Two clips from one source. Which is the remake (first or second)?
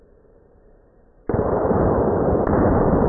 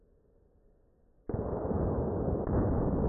first